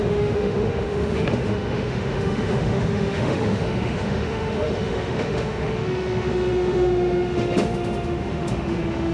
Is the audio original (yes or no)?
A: no